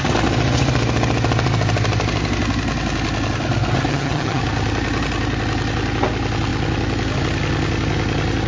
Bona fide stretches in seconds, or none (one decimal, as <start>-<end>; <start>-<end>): 0.0-3.9; 4.4-8.5